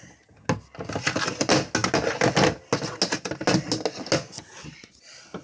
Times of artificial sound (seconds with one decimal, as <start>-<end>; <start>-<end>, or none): none